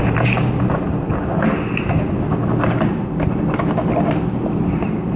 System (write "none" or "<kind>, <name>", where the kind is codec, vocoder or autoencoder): none